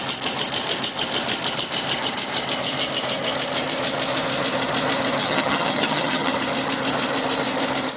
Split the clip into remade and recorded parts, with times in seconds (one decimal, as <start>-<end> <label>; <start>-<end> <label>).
0.0-5.2 recorded; 5.2-6.3 remade; 6.3-8.0 recorded